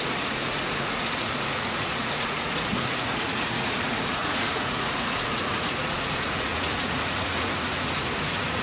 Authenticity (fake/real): fake